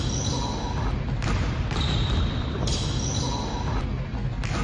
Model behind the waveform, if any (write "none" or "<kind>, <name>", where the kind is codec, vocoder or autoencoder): none